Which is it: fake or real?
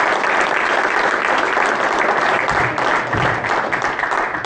real